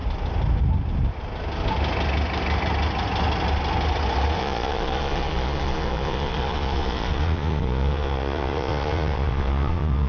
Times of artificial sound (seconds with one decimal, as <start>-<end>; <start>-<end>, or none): 4.4-10.1